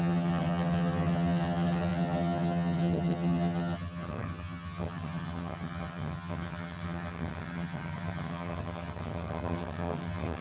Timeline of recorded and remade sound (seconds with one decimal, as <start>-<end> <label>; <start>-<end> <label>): 0.0-10.4 remade